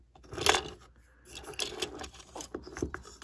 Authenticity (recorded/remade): recorded